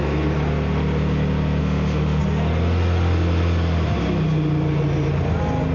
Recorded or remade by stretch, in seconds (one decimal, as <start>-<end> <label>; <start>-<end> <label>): 0.0-1.6 recorded; 1.6-2.2 remade; 2.2-5.7 recorded